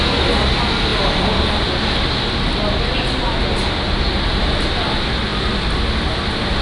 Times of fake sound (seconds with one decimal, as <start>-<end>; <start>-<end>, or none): none